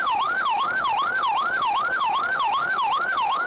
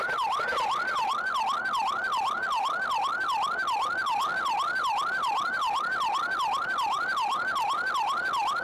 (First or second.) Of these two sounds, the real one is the second